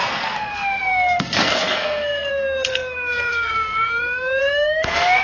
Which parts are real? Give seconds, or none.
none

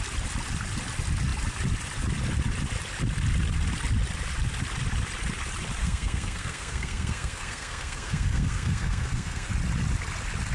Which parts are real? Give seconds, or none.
0.0-5.8; 9.5-10.5

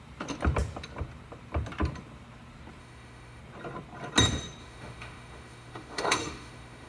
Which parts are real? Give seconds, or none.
0.0-2.8; 3.4-4.6

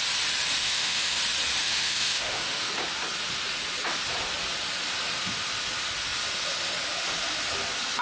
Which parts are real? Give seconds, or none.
0.0-0.6; 1.2-1.6; 2.7-8.0

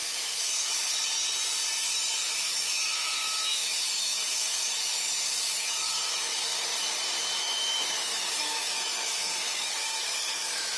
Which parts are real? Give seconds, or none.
1.0-2.2; 6.7-7.4